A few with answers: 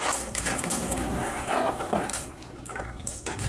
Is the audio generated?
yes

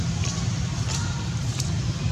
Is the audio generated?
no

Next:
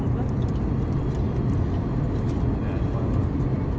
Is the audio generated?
no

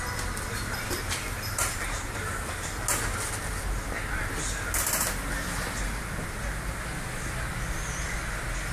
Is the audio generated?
no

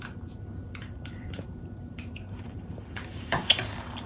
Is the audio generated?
yes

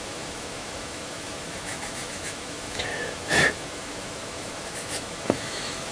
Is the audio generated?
yes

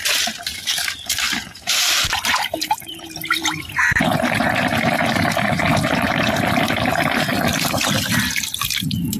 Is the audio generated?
yes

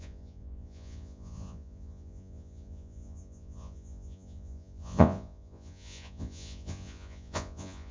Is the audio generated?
yes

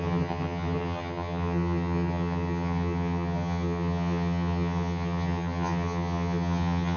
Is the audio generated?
yes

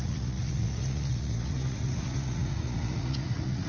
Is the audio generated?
yes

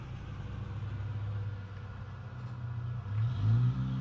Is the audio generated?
no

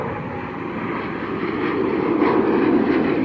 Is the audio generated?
no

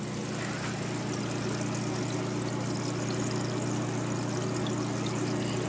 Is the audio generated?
no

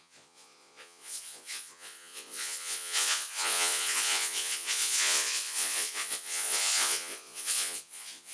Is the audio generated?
yes